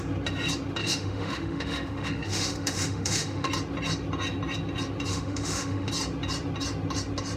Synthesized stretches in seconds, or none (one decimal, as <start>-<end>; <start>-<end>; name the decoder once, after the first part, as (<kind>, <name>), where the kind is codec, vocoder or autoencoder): 0.8-3.5 (autoencoder, DAC-VAE); 5.1-5.9